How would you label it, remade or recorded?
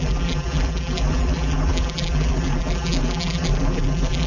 remade